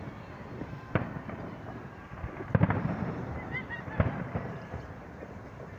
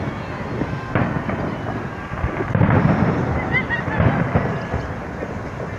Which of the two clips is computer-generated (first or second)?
first